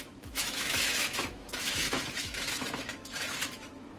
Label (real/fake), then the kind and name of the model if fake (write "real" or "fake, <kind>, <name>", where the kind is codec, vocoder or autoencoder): fake, autoencoder, DAC-VAE